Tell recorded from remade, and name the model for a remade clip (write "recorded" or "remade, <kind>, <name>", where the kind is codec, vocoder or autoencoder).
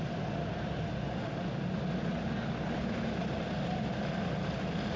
recorded